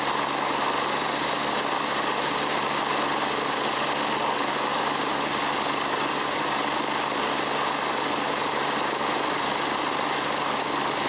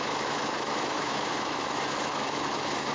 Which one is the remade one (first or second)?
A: second